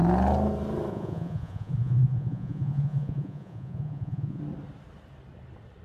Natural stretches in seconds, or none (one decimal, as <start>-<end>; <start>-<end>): 0.0-0.9; 4.4-5.8